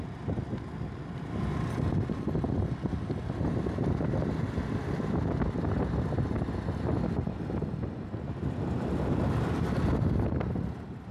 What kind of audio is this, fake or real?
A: real